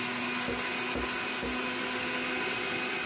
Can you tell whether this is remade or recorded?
recorded